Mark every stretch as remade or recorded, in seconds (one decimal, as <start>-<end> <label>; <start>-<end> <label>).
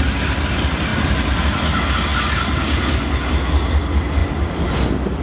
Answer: 0.0-5.2 recorded